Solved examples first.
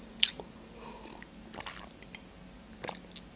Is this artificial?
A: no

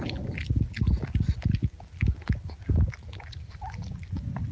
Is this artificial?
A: no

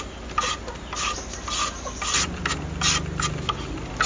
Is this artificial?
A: no